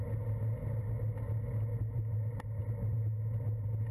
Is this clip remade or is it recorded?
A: recorded